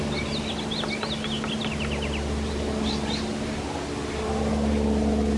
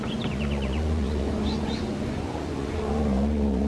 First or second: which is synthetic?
second